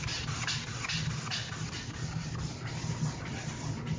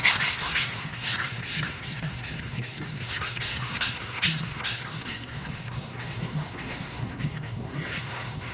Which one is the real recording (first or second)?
first